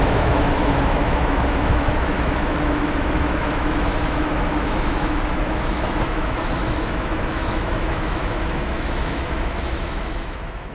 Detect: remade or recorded remade